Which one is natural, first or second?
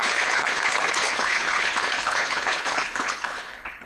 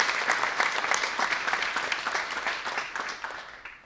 second